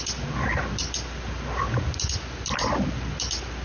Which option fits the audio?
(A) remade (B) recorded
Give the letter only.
B